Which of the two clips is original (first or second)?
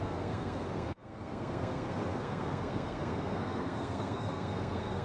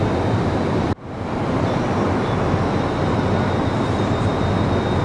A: second